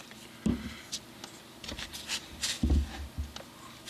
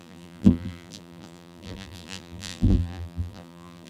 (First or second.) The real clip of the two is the first